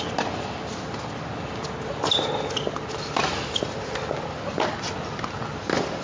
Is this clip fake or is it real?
real